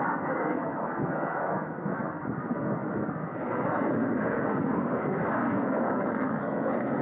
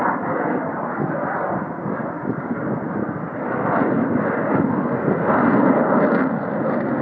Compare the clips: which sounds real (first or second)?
second